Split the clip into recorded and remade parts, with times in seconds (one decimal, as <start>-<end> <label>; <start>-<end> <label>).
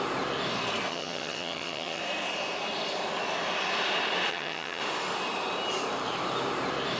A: 0.0-0.9 recorded; 0.9-2.0 remade; 2.0-4.3 recorded; 4.3-4.8 remade; 4.8-7.0 recorded